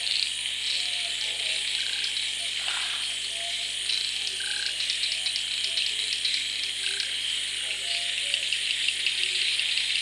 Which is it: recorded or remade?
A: recorded